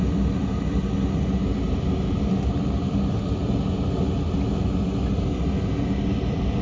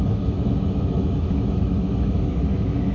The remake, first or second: second